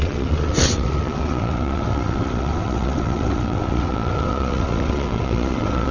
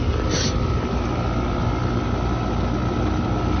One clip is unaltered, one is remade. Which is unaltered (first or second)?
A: second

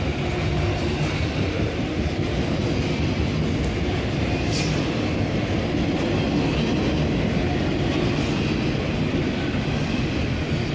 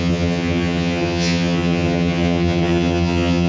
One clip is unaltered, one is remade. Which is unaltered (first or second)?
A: first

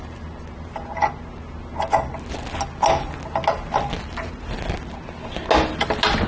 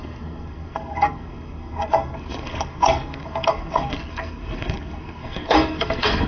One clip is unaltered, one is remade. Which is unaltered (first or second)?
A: first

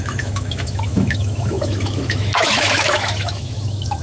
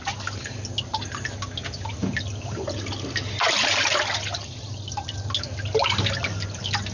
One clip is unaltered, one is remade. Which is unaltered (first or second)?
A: second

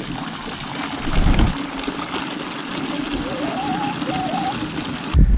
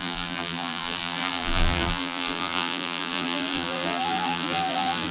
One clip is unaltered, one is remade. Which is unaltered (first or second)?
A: first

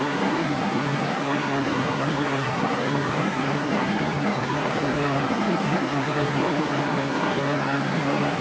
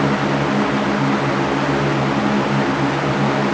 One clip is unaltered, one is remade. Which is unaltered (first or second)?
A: second